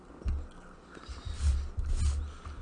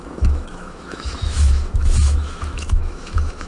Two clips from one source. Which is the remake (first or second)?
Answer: second